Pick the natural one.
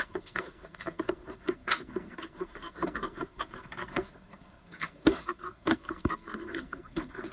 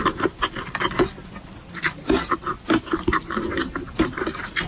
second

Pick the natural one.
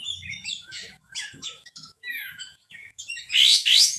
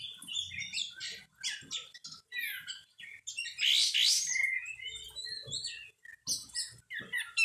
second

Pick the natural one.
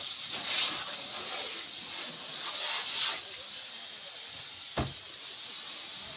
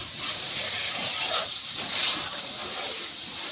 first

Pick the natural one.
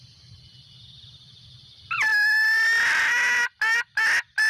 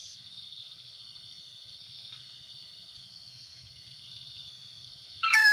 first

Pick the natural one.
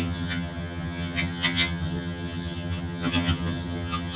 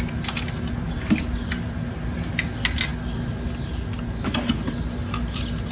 second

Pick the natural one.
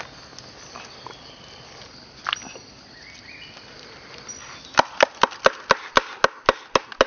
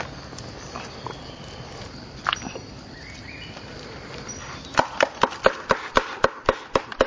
first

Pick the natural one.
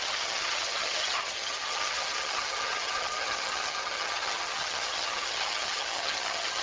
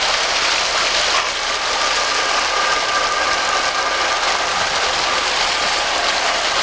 second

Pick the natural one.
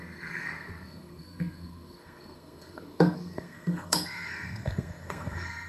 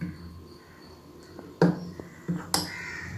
second